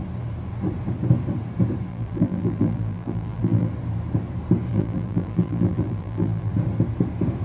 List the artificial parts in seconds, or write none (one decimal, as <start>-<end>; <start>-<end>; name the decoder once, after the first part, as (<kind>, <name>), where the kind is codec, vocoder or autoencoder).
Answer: 1.9-3.7 (vocoder, BigVGAN v2); 4.7-6.5